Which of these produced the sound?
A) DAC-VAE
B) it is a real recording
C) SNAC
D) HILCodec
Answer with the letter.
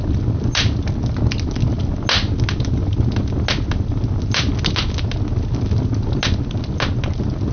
B